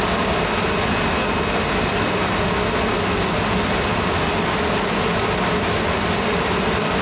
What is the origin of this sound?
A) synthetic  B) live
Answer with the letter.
B